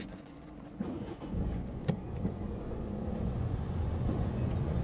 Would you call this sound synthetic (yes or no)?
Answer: yes